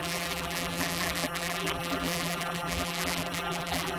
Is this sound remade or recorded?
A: remade